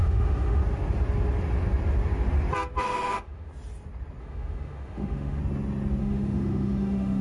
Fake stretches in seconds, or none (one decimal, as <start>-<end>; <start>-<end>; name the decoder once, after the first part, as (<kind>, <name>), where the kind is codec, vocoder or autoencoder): 0.0-0.6 (autoencoder, DAC-VAE); 2.8-3.5; 4.2-5.4; 6.0-7.2